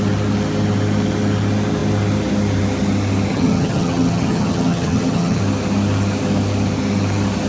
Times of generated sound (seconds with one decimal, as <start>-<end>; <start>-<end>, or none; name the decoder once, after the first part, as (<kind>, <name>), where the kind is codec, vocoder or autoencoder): 3.3-5.4 (vocoder, HiFi-GAN)